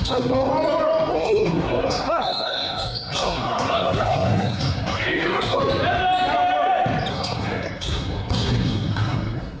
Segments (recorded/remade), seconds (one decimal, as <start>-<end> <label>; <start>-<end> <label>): 0.0-0.5 remade; 0.5-1.1 recorded; 1.1-5.6 remade; 5.6-7.1 recorded; 7.1-9.6 remade